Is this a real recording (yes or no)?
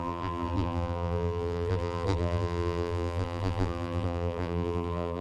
no